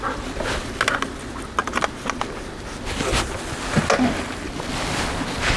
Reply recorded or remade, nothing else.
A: recorded